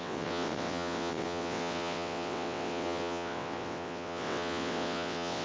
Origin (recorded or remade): remade